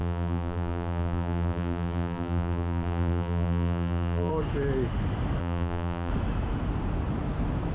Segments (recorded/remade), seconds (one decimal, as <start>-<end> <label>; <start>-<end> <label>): 0.0-4.3 remade; 4.3-5.4 recorded; 5.4-6.1 remade; 6.1-7.7 recorded